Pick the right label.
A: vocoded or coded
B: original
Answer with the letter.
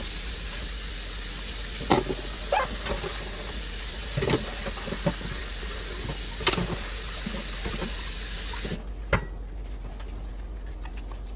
B